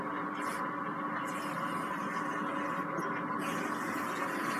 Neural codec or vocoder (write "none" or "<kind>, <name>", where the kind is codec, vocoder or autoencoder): none